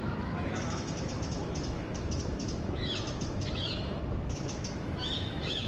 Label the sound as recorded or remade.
remade